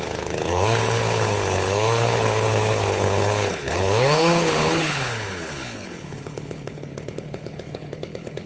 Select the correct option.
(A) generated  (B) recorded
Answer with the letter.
A